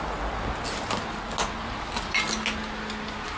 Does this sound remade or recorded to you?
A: recorded